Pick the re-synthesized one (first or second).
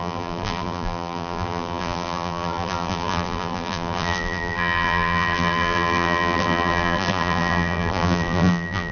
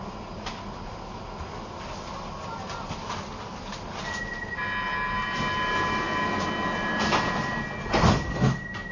first